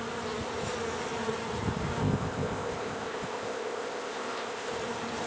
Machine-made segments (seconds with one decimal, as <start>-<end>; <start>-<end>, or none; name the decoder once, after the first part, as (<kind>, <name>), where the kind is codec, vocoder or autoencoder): 2.0-4.7 (codec, ZipCodec)